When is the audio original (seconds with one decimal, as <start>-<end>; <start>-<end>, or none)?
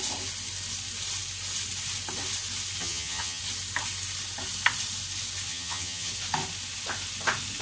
0.0-2.8; 3.4-5.5; 6.1-7.6